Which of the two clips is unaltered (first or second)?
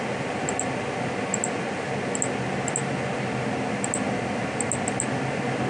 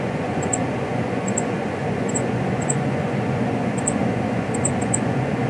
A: first